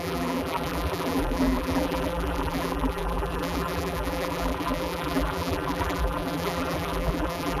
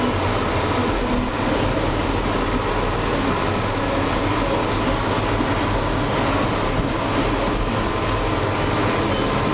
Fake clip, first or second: first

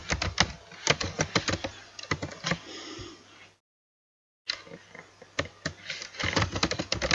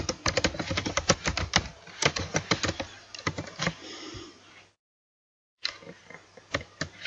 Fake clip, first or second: second